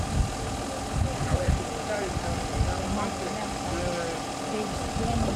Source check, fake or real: real